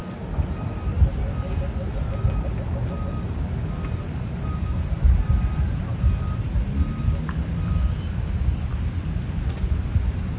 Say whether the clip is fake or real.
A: real